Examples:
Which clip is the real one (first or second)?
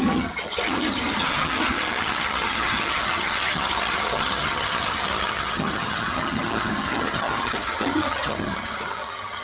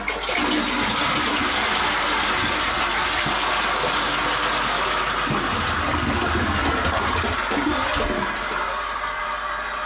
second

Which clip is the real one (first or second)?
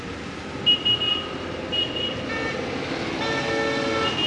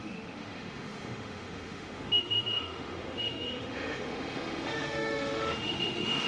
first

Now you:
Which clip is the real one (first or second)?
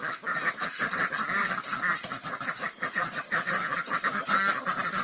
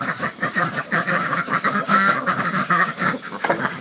first